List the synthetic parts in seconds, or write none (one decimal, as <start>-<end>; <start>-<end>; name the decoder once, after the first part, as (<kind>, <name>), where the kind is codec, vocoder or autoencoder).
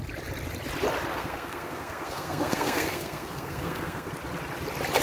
1.1-4.1 (codec, SNAC)